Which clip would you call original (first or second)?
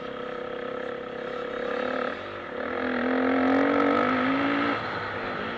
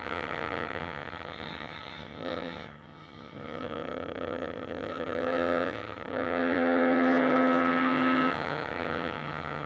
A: first